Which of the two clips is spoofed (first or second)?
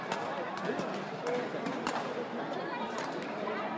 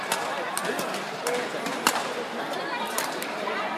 second